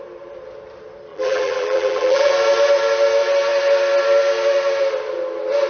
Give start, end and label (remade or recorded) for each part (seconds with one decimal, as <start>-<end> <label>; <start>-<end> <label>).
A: 0.0-1.1 recorded; 1.1-2.3 remade; 2.3-5.7 recorded